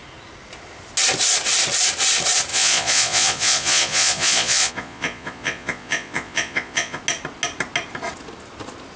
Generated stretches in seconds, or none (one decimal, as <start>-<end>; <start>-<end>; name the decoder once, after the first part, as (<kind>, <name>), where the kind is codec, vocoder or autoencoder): 2.5-7.0 (vocoder, Vocos)